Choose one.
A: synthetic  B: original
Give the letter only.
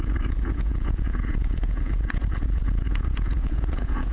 A